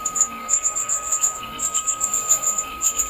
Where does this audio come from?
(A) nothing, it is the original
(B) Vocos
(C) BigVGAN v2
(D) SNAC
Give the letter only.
D